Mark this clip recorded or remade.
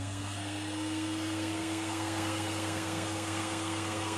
remade